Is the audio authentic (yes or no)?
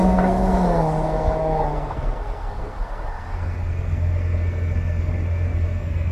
no